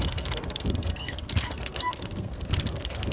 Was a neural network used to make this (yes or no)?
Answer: yes